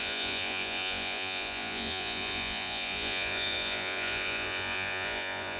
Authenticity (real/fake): fake